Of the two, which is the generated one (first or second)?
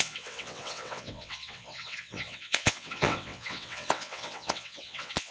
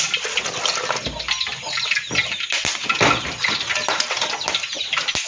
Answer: first